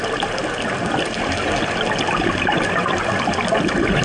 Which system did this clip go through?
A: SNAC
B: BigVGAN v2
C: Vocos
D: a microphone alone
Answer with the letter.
D